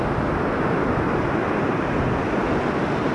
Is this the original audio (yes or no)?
yes